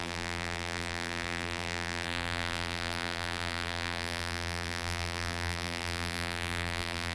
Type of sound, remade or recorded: remade